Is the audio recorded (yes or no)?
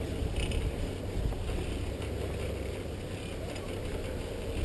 yes